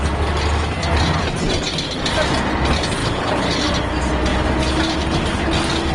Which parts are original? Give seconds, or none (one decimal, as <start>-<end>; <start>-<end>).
0.0-3.0; 3.6-5.9